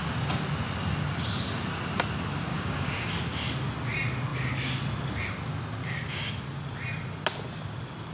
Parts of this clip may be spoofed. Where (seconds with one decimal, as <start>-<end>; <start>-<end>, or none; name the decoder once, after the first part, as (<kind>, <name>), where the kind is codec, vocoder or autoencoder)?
2.5-3.2 (codec, DAC); 5.8-6.3